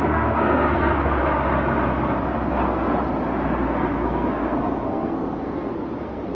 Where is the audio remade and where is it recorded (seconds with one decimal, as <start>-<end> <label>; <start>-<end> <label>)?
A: 0.0-1.2 remade; 1.2-2.5 recorded; 2.5-2.9 remade; 2.9-3.6 recorded; 3.6-6.3 remade